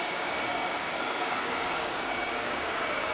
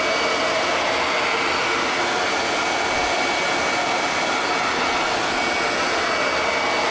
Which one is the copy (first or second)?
first